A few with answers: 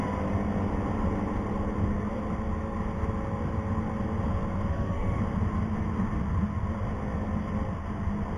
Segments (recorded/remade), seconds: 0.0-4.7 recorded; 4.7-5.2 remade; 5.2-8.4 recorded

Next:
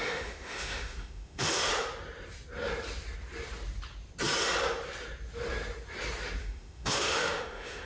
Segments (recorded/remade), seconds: 0.0-1.7 remade; 1.7-6.4 recorded; 6.4-7.9 remade

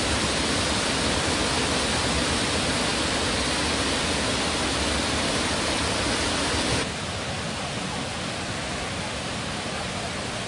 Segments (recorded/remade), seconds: 0.0-10.5 recorded